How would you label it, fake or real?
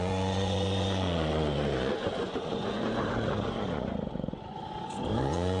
fake